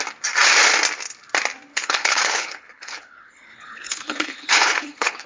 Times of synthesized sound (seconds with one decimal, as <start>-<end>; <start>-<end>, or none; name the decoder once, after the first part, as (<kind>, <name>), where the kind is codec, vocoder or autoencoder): 1.7-5.3 (codec, HILCodec)

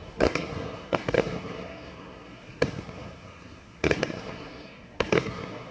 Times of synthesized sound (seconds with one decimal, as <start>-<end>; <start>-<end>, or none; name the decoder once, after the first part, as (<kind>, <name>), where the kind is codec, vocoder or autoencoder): 0.0-5.7 (codec, SNAC)

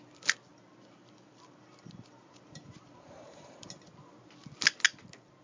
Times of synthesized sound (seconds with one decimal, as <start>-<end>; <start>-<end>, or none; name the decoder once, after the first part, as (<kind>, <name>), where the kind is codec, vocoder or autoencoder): 0.5-3.7 (vocoder, BigVGAN v2)

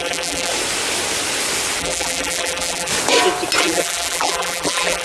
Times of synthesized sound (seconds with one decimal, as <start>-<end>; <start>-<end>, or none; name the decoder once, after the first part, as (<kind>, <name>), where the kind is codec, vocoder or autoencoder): 0.0-0.5 (vocoder, BigVGAN v2); 1.8-2.9; 3.6-5.0

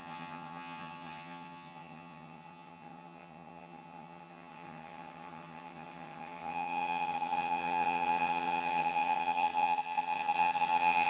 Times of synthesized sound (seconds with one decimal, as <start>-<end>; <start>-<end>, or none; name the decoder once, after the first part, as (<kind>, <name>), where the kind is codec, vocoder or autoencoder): 0.0-11.1 (vocoder, HiFi-GAN)